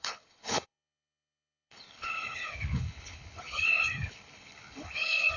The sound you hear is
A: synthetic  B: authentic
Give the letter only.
A